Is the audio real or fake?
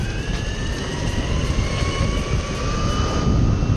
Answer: real